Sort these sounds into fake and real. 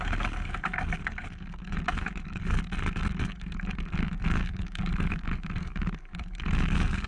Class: fake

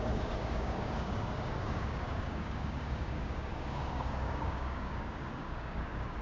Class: fake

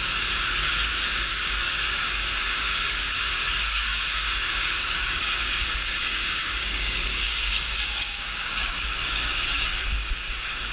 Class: fake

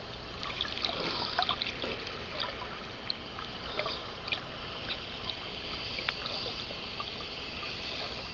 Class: real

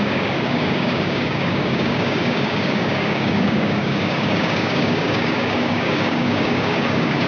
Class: fake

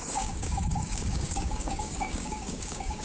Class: fake